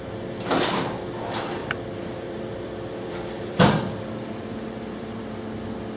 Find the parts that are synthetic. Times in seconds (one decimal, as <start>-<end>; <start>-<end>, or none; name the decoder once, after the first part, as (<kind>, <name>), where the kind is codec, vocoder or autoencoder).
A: 1.6-5.2 (vocoder, BigVGAN v2)